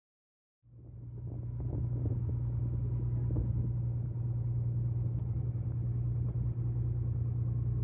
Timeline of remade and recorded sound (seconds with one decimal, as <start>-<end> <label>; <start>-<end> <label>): 0.0-7.8 recorded